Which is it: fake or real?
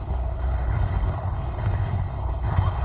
fake